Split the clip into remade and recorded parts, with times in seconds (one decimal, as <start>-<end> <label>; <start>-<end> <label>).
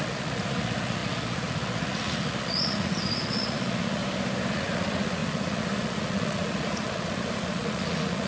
0.0-4.0 remade; 4.0-4.5 recorded; 4.5-8.3 remade